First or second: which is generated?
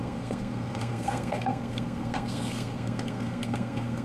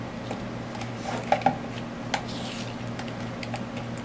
first